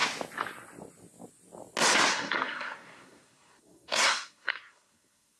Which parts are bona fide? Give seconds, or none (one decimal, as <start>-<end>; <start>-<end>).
0.0-2.1